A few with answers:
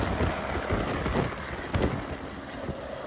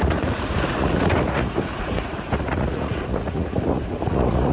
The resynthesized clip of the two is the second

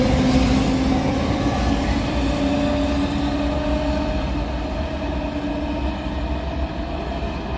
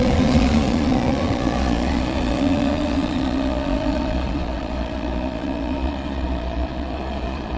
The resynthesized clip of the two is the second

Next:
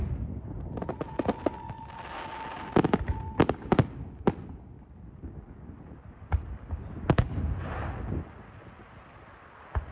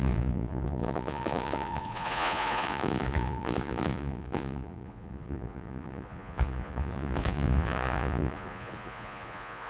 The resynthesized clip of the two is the second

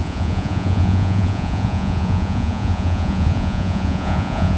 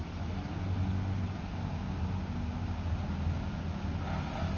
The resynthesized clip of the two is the first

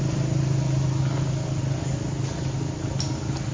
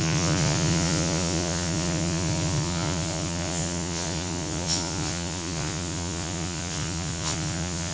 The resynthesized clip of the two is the second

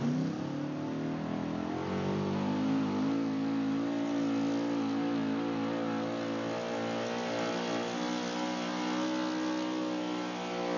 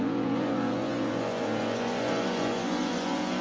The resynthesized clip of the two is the second